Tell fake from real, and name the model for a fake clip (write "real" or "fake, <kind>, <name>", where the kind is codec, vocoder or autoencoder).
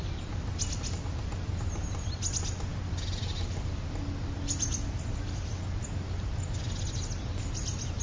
real